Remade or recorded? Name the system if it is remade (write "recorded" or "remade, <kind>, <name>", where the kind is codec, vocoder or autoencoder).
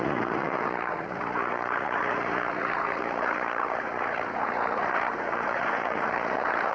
remade, vocoder, Vocos